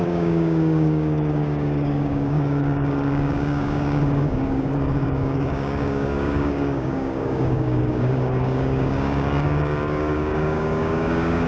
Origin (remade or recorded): remade